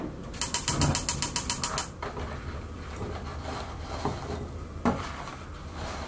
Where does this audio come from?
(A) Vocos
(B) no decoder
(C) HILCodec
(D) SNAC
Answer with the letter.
B